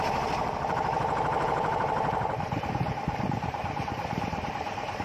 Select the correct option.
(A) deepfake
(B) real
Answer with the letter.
A